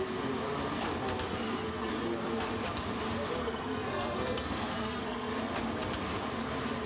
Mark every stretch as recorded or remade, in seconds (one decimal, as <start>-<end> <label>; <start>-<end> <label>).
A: 0.0-1.3 recorded; 1.3-1.9 remade; 1.9-3.4 recorded; 3.4-5.3 remade; 5.3-6.9 recorded